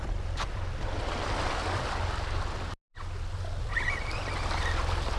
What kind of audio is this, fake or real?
real